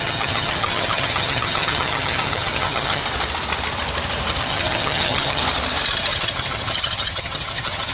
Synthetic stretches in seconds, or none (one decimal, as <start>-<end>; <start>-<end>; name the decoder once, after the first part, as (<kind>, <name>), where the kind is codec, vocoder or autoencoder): 0.0-3.0 (vocoder, HiFi-GAN); 4.4-5.4; 5.9-7.9